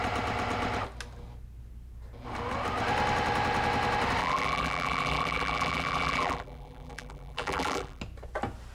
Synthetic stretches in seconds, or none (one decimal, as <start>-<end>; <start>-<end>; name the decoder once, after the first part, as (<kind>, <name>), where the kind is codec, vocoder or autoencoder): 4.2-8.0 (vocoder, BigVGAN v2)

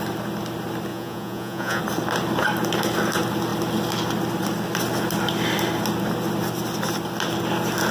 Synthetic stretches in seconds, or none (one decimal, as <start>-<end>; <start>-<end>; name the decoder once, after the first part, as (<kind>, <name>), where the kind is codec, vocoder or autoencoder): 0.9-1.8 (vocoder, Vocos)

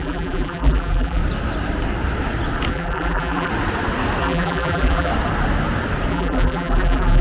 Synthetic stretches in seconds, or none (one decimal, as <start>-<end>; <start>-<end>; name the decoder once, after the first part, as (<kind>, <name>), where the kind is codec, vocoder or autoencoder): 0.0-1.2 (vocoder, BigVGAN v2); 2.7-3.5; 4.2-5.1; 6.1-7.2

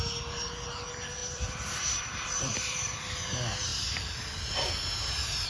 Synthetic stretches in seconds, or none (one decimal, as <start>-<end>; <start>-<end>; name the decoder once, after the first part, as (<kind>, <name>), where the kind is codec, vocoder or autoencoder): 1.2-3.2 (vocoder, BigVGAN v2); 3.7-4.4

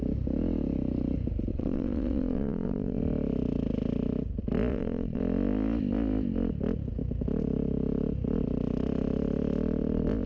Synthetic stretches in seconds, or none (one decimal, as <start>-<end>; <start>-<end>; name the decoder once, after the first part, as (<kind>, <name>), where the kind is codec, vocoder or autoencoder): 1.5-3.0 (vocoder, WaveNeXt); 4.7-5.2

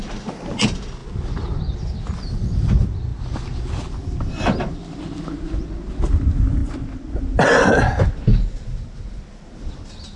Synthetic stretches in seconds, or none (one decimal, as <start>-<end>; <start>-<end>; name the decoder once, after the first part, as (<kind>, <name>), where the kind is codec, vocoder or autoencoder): none